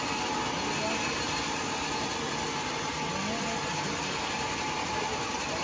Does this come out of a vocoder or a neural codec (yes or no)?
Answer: no